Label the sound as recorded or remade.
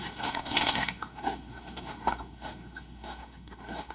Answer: remade